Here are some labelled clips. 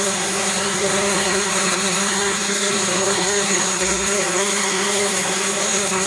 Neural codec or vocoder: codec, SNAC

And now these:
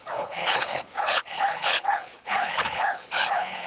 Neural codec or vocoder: codec, HILCodec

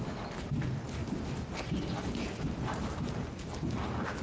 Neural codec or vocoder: none